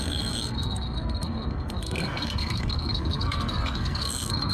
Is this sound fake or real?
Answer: fake